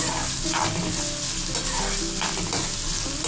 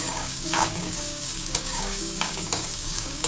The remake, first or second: second